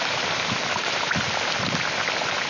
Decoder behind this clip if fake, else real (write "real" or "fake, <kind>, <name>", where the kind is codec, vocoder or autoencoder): real